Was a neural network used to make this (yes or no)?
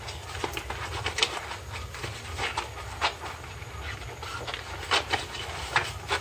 no